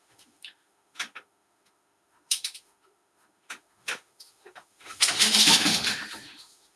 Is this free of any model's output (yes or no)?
no